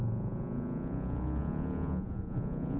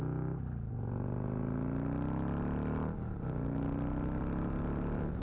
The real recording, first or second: second